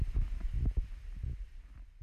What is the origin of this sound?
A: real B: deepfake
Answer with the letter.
A